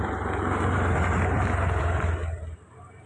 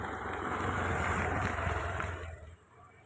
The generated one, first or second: second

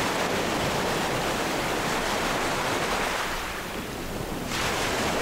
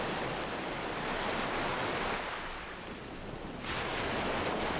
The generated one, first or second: first